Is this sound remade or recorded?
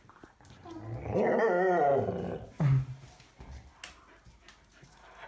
recorded